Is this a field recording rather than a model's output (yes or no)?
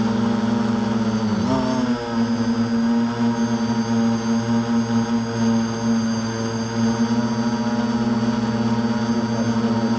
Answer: yes